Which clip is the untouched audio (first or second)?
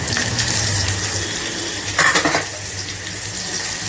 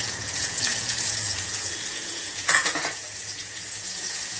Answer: first